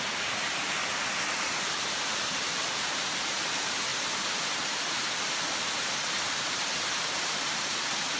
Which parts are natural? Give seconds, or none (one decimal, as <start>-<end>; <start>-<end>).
0.8-1.4; 3.9-4.9